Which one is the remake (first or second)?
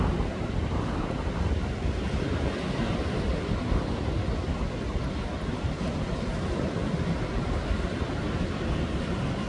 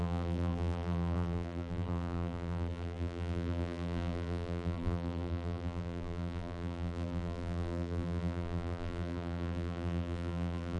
second